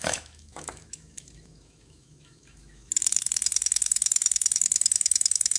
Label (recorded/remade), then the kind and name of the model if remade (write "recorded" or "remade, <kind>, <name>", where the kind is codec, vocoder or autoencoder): remade, autoencoder, DAC-VAE